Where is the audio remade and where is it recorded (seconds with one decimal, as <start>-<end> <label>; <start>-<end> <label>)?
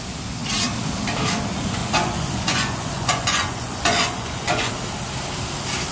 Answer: 0.0-1.8 recorded; 1.8-4.7 remade; 4.7-5.9 recorded